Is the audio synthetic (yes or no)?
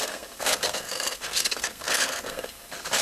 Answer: yes